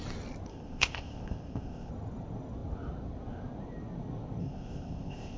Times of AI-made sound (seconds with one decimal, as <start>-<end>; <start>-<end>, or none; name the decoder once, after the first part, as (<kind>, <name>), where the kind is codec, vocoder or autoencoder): 0.5-1.9 (codec, ZipCodec); 4.4-5.4